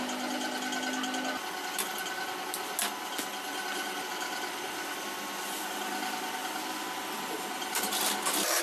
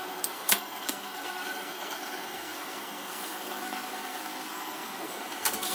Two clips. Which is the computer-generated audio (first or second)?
second